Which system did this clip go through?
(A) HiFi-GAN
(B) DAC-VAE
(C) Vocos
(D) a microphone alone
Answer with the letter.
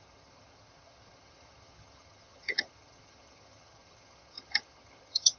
A